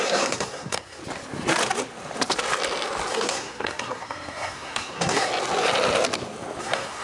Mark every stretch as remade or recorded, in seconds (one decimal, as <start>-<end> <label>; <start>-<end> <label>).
0.0-1.0 remade; 1.0-3.1 recorded; 3.1-5.3 remade; 5.3-6.6 recorded; 6.6-7.0 remade